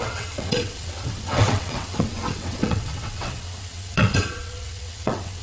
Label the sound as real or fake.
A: fake